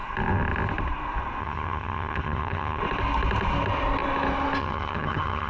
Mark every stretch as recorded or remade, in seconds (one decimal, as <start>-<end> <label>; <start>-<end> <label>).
0.0-1.4 recorded; 1.4-2.8 remade; 2.8-4.6 recorded; 4.6-5.5 remade